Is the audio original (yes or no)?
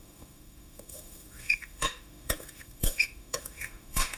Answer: no